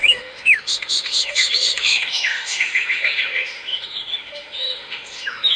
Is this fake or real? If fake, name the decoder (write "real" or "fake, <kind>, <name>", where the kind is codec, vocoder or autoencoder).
fake, autoencoder, DAC-VAE